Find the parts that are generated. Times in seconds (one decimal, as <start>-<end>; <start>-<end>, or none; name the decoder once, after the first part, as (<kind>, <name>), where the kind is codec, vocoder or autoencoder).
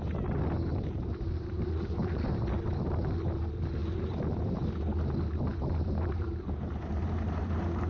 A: 0.7-2.4 (vocoder, BigVGAN v2); 3.8-4.7; 5.5-7.9